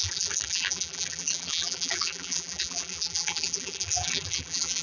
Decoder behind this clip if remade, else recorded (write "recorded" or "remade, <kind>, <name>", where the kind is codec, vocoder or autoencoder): remade, vocoder, BigVGAN v2